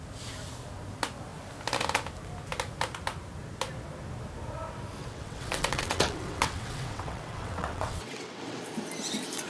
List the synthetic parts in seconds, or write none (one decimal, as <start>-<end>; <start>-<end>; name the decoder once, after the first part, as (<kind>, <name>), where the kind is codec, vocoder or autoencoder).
5.0-8.6 (vocoder, WaveNeXt)